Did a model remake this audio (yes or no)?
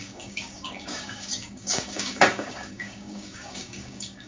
yes